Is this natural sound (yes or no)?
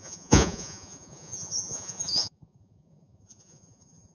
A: no